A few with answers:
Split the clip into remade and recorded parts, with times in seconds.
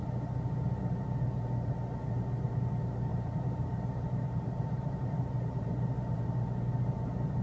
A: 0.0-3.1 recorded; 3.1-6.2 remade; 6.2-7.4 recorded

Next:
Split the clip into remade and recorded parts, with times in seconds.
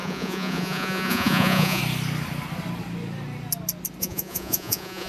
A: 0.0-1.8 remade; 1.8-4.0 recorded; 4.0-5.1 remade